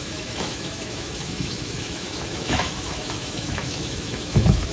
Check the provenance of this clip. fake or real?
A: fake